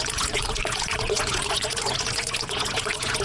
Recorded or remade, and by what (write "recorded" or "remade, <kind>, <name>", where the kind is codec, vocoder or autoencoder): remade, vocoder, Vocos